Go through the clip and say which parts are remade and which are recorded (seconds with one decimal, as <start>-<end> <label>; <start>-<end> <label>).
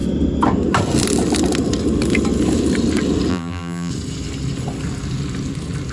0.0-3.3 recorded; 3.3-3.9 remade; 3.9-5.9 recorded